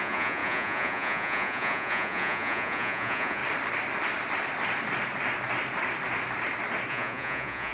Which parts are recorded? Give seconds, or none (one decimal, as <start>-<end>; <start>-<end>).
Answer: 3.4-6.9